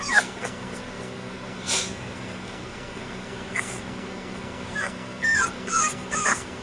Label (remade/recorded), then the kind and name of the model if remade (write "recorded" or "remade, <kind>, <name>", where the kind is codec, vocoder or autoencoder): remade, codec, SNAC